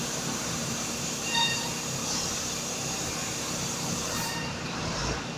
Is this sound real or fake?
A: fake